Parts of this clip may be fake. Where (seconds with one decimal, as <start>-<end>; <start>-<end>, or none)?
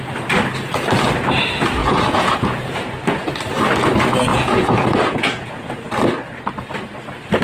1.8-2.9; 4.3-5.7